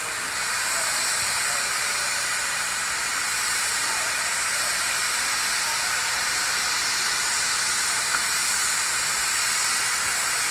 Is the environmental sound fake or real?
fake